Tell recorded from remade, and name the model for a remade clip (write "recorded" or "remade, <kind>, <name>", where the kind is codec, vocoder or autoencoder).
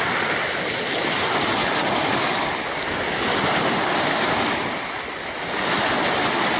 recorded